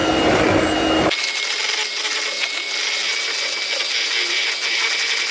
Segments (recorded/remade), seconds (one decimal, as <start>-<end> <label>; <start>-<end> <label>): 0.0-5.3 recorded